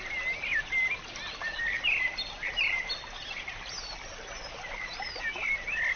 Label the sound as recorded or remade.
recorded